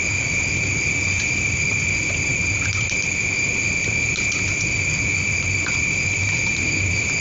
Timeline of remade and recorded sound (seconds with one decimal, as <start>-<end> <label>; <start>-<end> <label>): 0.0-7.2 recorded